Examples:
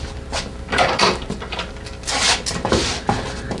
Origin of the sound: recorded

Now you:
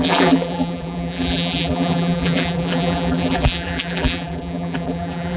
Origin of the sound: remade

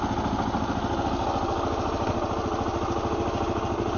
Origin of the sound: recorded